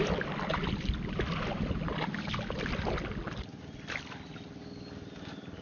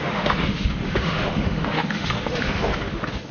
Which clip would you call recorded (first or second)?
first